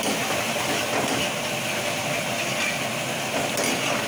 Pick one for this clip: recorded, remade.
remade